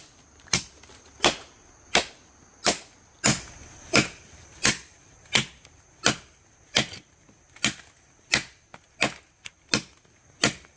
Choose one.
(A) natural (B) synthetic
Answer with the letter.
A